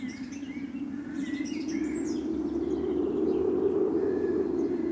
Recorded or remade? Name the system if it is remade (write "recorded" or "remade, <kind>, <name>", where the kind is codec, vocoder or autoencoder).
recorded